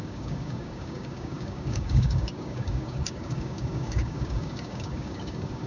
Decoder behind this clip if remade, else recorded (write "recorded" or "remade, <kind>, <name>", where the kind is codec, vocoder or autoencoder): remade, codec, DAC